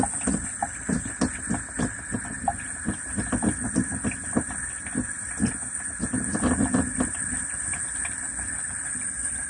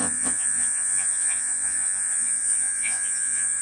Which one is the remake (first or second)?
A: second